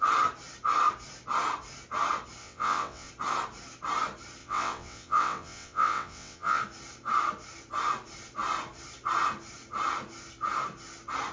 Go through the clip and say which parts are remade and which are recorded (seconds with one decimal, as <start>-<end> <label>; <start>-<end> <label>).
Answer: 0.0-2.4 recorded; 2.4-3.1 remade; 3.1-4.4 recorded; 4.4-6.6 remade; 6.6-11.3 recorded